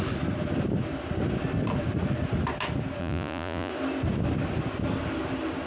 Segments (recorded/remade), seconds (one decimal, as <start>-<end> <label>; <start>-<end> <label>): 0.0-3.0 recorded; 3.0-3.7 remade; 3.7-5.7 recorded